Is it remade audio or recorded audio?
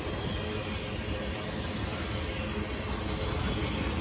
recorded